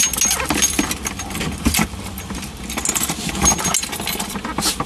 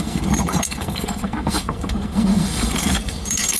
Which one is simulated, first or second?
second